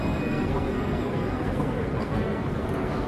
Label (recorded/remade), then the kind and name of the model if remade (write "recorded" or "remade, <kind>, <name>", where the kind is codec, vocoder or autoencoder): remade, codec, SNAC